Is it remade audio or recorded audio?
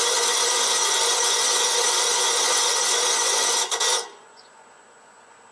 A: remade